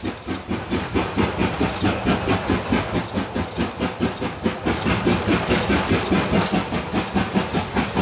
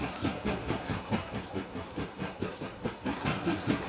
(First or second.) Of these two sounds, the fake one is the second